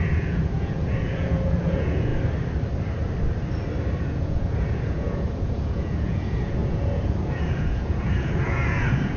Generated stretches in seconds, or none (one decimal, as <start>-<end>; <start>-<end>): 0.0-2.1; 4.0-9.2